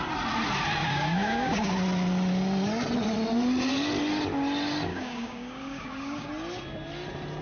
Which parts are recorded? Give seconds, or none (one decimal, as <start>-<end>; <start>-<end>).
0.0-0.8; 1.7-4.9; 6.3-7.4